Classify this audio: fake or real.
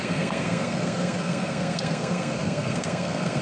fake